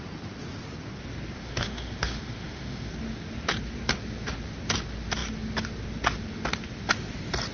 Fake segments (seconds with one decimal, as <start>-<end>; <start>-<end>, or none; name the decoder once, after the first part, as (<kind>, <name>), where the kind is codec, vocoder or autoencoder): 1.4-2.9 (autoencoder, DAC-VAE)